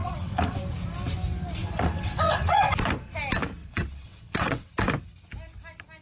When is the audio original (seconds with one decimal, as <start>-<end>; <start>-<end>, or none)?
0.6-1.6; 2.7-3.6; 4.7-6.0